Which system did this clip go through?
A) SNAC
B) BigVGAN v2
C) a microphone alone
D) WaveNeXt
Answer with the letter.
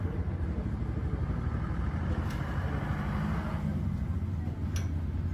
C